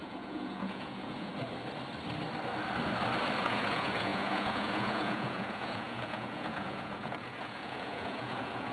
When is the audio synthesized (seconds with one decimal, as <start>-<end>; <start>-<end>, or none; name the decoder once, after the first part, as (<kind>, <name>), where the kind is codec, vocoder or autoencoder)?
0.0-1.3 (vocoder, Vocos); 3.4-8.7